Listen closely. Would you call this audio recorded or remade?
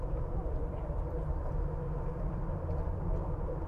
remade